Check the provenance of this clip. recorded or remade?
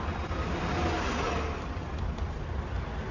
recorded